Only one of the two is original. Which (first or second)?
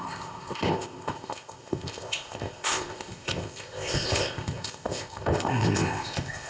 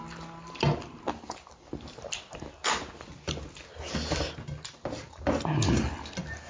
second